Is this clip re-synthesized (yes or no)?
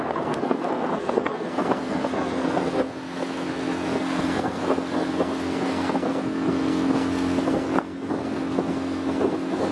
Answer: yes